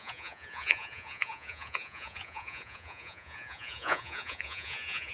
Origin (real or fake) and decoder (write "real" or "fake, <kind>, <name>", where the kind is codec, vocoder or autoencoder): fake, vocoder, Vocos